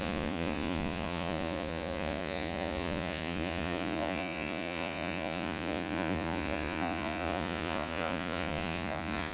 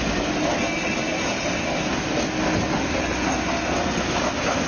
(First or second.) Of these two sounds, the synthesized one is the first